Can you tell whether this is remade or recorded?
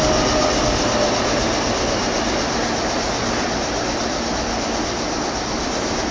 recorded